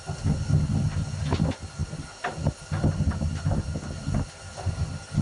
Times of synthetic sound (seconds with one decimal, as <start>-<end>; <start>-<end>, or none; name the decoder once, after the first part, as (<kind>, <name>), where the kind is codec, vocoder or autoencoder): none

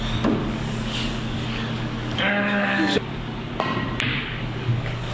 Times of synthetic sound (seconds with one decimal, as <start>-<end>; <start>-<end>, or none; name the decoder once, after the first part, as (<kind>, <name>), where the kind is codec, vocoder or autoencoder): 0.4-3.5 (codec, DAC); 4.1-5.1

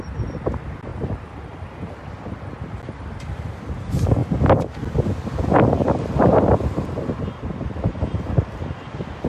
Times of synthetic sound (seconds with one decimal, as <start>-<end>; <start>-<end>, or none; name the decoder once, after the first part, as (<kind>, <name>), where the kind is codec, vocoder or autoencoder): none

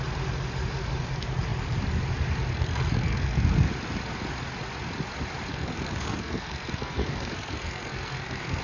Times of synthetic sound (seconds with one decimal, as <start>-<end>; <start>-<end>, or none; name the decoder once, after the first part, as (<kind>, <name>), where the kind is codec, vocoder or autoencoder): 2.5-3.7 (codec, SNAC); 5.5-8.6

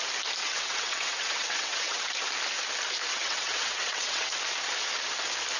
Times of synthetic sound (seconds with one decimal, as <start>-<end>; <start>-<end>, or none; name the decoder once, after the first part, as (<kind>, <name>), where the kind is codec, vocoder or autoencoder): 0.4-2.1 (vocoder, WaveNeXt); 3.1-4.3